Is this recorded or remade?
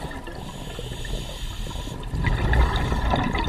remade